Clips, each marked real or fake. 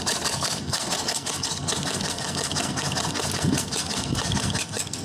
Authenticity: fake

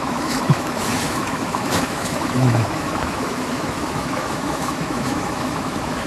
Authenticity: fake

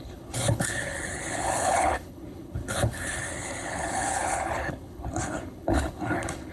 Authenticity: fake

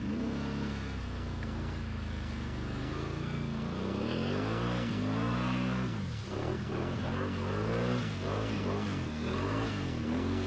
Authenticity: fake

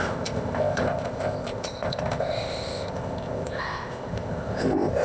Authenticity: fake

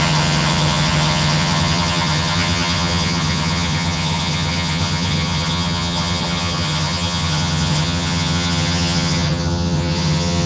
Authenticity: fake